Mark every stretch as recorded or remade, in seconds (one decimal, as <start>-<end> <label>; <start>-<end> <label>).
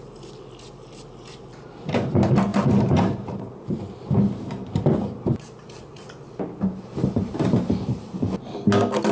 0.0-2.5 recorded; 2.5-3.8 remade; 3.8-9.1 recorded